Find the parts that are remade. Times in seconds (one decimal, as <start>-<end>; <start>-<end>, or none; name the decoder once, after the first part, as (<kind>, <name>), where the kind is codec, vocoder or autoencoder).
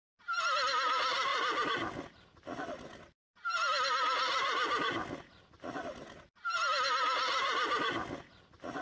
none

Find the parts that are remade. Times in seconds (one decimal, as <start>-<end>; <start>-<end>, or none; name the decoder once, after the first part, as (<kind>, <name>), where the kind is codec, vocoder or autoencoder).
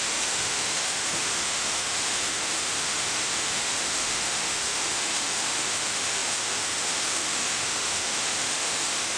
0.0-9.2 (autoencoder, DAC-VAE)